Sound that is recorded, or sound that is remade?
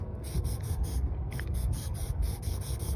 remade